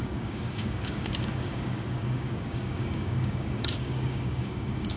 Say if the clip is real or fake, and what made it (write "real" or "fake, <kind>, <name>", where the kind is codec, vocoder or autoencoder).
fake, codec, DAC